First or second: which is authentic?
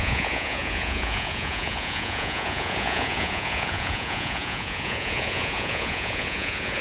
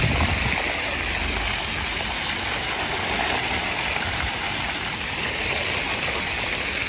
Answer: second